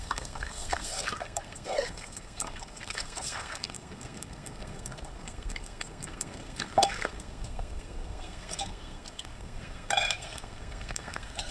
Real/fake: fake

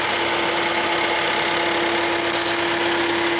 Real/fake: real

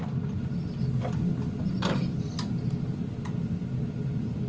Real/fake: real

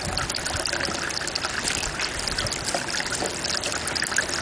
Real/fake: real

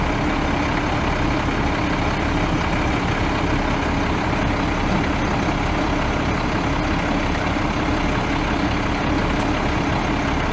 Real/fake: real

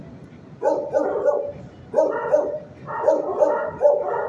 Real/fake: real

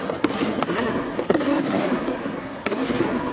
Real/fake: fake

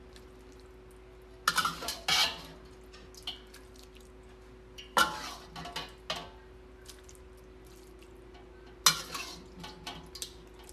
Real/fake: real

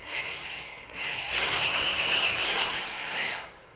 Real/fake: fake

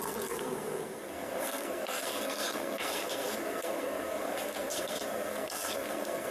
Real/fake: fake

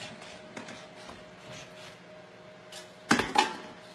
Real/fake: real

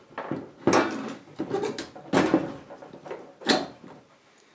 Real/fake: real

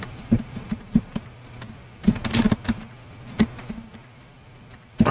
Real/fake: real